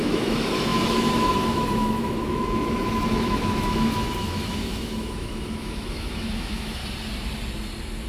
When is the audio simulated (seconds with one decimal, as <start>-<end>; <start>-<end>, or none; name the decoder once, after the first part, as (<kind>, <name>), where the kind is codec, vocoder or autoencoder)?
0.0-6.8 (autoencoder, DAC-VAE)